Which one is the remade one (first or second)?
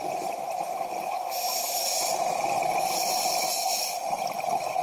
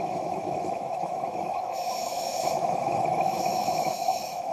second